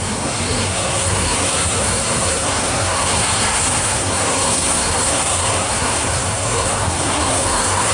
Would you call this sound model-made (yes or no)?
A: yes